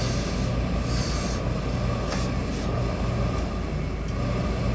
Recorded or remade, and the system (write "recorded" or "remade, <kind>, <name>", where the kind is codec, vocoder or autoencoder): recorded